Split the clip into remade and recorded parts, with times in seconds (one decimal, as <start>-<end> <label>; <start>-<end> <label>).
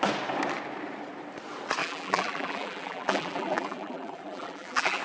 0.0-1.8 recorded; 1.8-5.0 remade